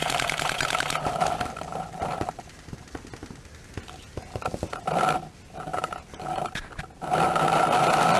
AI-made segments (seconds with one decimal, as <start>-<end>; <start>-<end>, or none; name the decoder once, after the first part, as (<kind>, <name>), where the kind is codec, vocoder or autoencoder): 0.0-1.2 (vocoder, BigVGAN v2); 1.7-2.4; 5.7-6.7